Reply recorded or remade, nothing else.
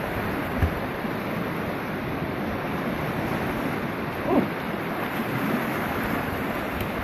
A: recorded